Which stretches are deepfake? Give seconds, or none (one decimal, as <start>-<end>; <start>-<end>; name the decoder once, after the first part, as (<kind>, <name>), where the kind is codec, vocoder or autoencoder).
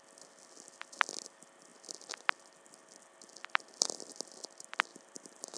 4.9-5.6 (vocoder, BigVGAN v2)